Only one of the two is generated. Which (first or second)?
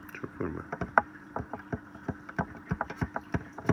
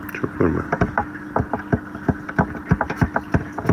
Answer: first